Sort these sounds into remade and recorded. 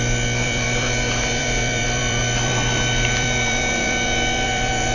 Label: remade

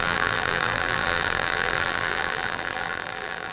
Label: remade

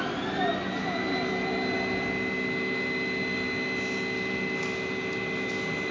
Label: recorded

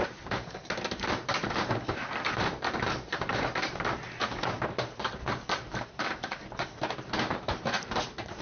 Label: remade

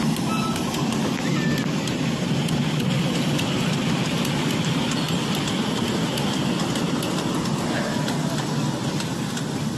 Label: recorded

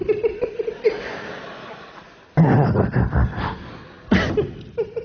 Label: recorded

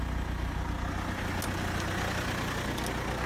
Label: recorded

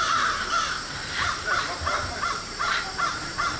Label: remade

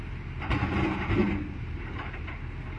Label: remade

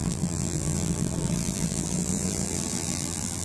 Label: remade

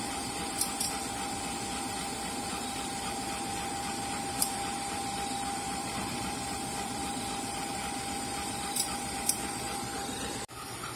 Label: remade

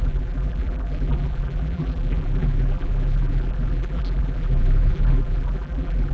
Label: remade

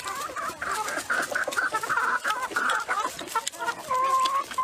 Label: recorded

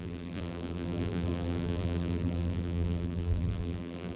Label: remade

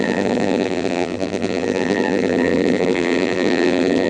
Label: remade